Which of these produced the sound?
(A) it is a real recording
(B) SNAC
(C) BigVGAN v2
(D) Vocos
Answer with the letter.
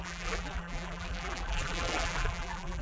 C